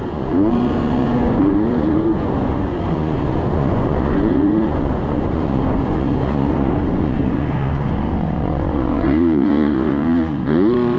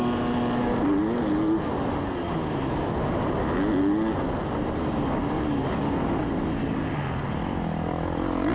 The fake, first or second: first